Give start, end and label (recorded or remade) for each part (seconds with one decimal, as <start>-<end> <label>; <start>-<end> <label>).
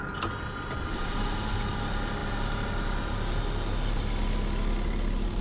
0.0-5.4 recorded